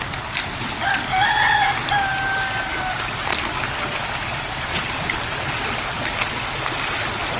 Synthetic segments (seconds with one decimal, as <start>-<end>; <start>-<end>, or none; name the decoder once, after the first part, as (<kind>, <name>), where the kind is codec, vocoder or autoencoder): none